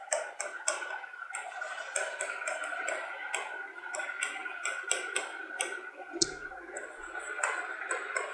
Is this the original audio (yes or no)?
yes